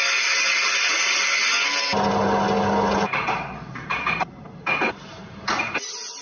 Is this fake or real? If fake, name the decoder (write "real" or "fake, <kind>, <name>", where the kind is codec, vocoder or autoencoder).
real